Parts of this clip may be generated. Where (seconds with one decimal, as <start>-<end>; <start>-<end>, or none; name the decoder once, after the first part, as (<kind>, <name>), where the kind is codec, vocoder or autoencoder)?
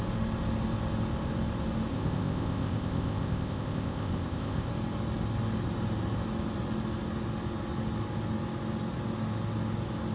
1.9-4.7 (codec, ZipCodec)